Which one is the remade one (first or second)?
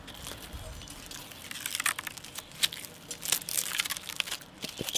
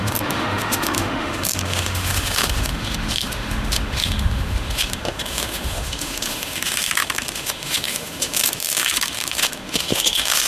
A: second